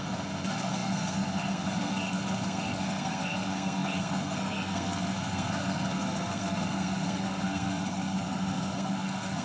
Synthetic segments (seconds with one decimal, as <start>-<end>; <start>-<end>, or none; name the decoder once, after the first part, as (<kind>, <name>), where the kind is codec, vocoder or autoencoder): 0.0-9.4 (codec, SNAC)